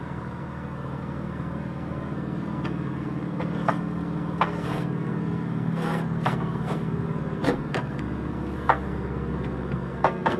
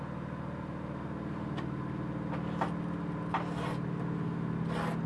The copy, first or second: first